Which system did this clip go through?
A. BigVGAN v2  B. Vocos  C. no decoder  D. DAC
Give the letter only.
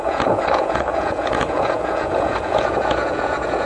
B